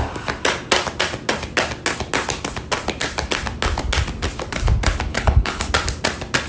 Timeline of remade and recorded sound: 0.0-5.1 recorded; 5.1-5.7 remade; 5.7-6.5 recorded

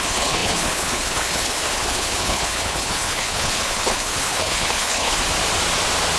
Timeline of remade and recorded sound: 0.0-5.2 remade; 5.2-6.2 recorded

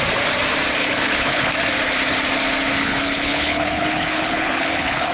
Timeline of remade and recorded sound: 0.0-0.8 recorded; 0.8-1.5 remade; 1.5-2.8 recorded; 2.8-5.1 remade

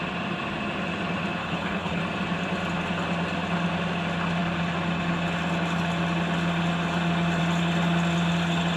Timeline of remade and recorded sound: 0.0-1.4 recorded; 1.4-2.0 remade; 2.0-8.8 recorded